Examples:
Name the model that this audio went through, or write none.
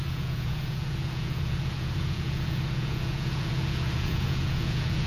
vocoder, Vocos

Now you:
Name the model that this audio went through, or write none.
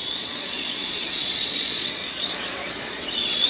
vocoder, Vocos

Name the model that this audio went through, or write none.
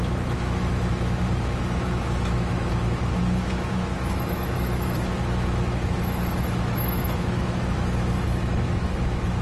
autoencoder, DAC-VAE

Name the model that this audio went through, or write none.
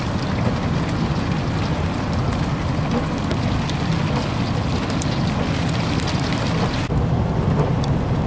none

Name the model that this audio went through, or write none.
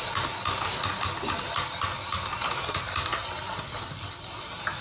none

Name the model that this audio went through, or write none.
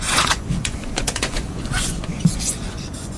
vocoder, Vocos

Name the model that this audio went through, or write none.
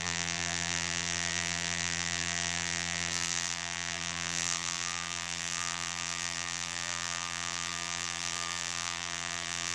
vocoder, BigVGAN v2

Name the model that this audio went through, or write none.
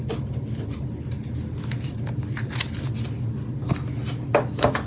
none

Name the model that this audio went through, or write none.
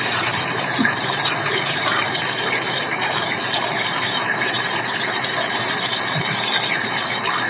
vocoder, BigVGAN v2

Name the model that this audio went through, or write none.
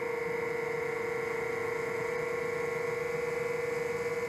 none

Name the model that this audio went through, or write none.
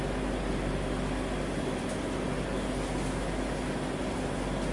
none